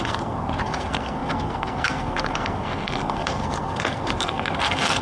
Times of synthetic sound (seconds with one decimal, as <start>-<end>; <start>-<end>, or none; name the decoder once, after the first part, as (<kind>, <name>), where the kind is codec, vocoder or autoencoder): 0.0-5.0 (codec, SNAC)